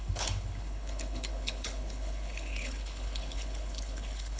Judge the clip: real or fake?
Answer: fake